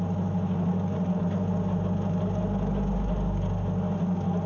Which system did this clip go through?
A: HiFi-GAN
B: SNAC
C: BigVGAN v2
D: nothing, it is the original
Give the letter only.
D